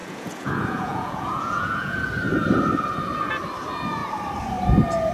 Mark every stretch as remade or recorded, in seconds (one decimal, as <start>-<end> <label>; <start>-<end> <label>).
0.0-2.0 remade; 2.0-5.1 recorded